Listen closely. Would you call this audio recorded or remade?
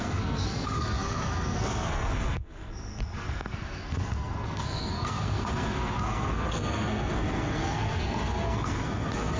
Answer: remade